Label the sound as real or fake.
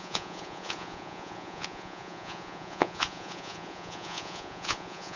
fake